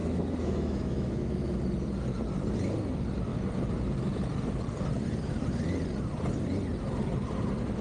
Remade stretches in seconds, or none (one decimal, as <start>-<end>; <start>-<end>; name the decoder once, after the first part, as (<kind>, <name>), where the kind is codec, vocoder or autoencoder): 0.0-1.6 (autoencoder, DAC-VAE)